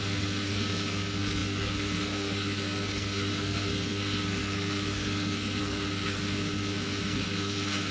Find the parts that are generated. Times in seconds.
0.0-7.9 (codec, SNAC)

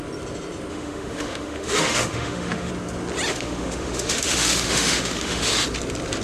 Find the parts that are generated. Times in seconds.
0.7-2.7 (autoencoder, DAC-VAE); 3.3-5.5

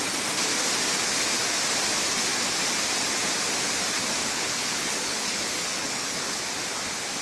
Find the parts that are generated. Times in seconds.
4.2-6.4 (codec, HILCodec)

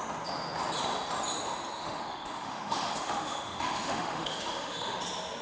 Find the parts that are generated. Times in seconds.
1.8-5.0 (autoencoder, DAC-VAE)

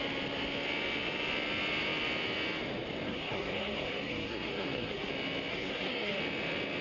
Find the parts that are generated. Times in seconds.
3.1-5.1 (codec, SNAC); 5.5-6.2

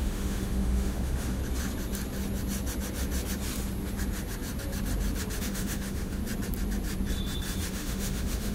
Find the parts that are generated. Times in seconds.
0.0-1.4 (autoencoder, DAC-VAE); 5.4-6.2; 7.7-8.5

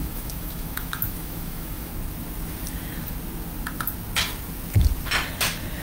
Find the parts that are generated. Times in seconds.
0.0-1.9 (autoencoder, DAC-VAE)

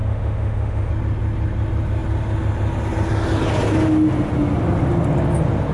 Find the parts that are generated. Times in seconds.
0.0-0.9 (autoencoder, DAC-VAE)